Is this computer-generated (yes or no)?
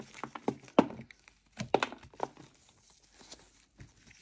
no